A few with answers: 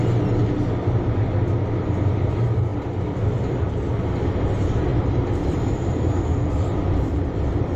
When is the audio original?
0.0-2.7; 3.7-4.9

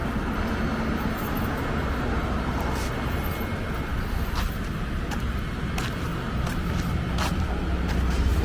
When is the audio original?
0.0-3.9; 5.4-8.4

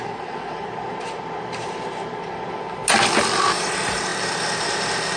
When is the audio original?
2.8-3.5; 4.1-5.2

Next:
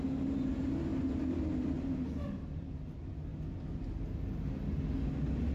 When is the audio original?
0.0-5.5